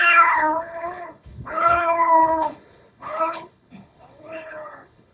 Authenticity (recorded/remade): remade